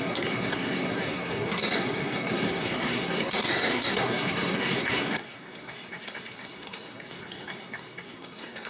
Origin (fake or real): fake